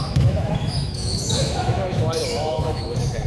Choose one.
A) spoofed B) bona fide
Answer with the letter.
A